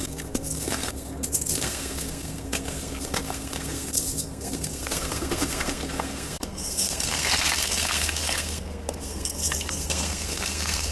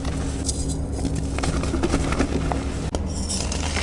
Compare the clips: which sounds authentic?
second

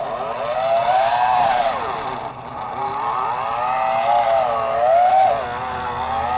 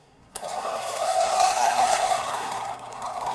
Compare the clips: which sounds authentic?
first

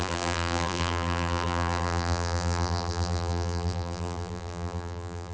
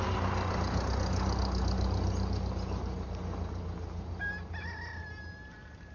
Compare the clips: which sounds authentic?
second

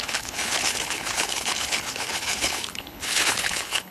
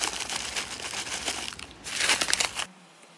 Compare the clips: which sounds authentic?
second